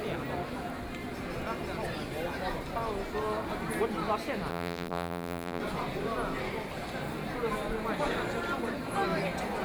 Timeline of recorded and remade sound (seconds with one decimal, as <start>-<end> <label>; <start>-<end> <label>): 0.0-4.5 recorded; 4.5-5.6 remade; 5.6-9.6 recorded